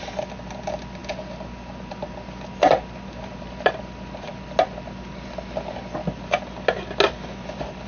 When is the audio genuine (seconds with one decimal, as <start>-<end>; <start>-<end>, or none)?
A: 0.0-7.9